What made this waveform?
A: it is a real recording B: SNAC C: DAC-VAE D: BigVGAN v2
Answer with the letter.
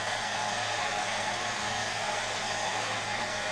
B